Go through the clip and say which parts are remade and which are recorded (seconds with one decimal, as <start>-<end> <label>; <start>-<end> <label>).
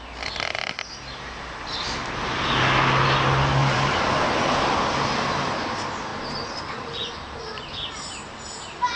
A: 0.0-3.6 recorded; 3.6-4.8 remade; 4.8-6.1 recorded; 6.1-7.4 remade; 7.4-9.0 recorded